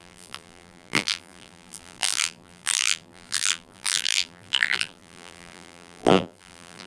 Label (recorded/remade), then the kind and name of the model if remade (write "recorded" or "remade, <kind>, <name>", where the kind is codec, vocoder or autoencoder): remade, vocoder, BigVGAN v2